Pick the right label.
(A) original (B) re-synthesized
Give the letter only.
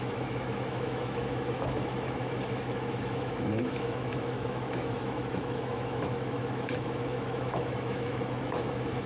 B